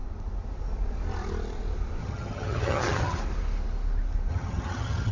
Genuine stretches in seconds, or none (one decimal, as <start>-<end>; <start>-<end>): 0.0-2.0; 3.2-4.3